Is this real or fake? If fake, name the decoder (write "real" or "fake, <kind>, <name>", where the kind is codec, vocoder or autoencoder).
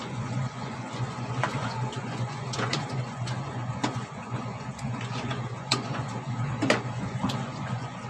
fake, vocoder, Vocos